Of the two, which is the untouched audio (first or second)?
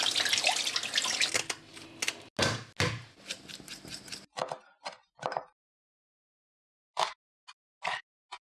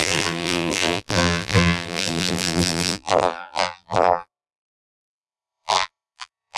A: first